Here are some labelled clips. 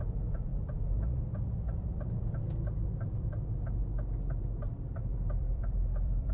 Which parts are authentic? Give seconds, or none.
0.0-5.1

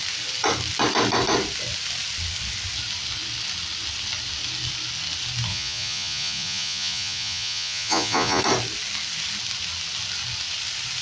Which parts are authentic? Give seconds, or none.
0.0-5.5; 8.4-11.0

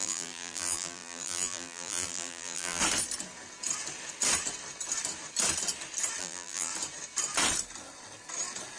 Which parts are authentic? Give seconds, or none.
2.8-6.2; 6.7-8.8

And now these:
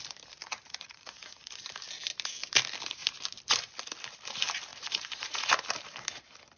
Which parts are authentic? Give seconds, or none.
0.0-0.4; 1.6-4.7; 5.5-6.6

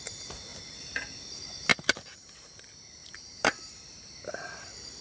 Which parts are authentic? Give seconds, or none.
0.0-0.5; 1.0-1.7; 2.5-3.0; 4.3-5.0

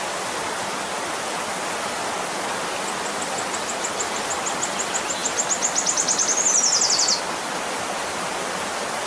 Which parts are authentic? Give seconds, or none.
0.0-9.1

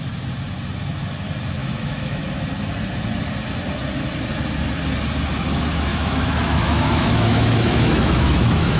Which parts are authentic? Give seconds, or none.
0.0-1.6; 2.2-5.9